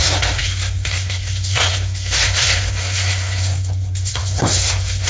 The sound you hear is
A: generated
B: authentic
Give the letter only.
A